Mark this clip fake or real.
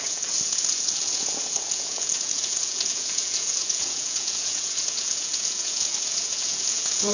fake